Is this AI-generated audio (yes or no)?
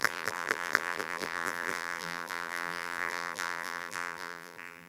yes